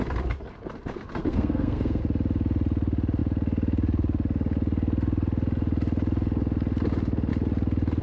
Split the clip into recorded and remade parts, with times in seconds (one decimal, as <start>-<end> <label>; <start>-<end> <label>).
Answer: 0.0-1.2 recorded; 1.2-2.0 remade; 2.0-8.0 recorded

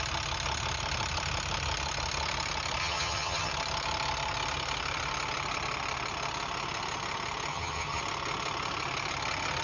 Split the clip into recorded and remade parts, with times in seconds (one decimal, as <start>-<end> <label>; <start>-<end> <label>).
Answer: 0.0-2.8 recorded; 2.8-3.5 remade; 3.5-7.5 recorded; 7.5-8.0 remade; 8.0-9.6 recorded

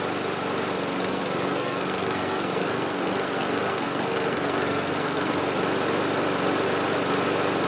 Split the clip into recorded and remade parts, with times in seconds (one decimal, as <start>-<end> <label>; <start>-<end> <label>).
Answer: 0.0-0.9 recorded; 0.9-5.4 remade; 5.4-7.7 recorded

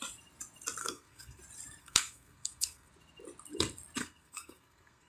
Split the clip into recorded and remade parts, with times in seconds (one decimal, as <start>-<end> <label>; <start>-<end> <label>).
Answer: 0.0-0.8 recorded; 0.8-1.4 remade; 1.4-1.8 recorded; 1.8-2.9 remade; 2.9-4.0 recorded; 4.0-5.1 remade